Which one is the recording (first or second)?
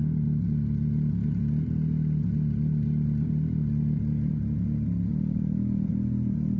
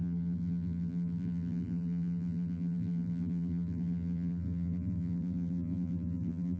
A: first